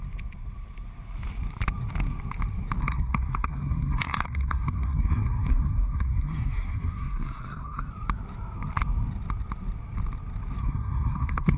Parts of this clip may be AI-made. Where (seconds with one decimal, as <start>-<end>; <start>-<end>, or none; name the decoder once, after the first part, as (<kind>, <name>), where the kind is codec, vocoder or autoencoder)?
2.8-7.9 (codec, SNAC); 10.6-11.6